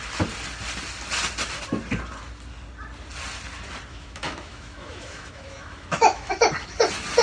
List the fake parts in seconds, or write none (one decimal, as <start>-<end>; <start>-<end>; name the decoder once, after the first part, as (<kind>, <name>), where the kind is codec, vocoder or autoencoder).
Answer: 3.9-6.3 (autoencoder, DAC-VAE)